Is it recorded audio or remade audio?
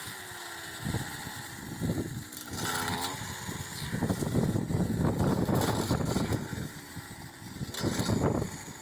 recorded